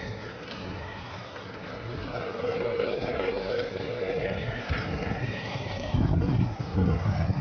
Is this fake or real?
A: fake